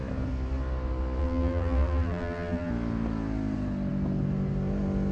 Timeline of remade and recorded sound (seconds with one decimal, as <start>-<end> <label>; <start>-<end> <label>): 0.0-1.2 recorded; 1.2-2.7 remade; 2.7-5.1 recorded